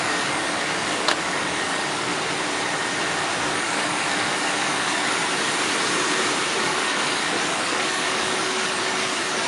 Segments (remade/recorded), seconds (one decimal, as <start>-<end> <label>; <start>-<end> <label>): 0.0-2.1 remade; 2.1-3.4 recorded; 3.4-5.2 remade; 5.2-6.6 recorded; 6.6-9.5 remade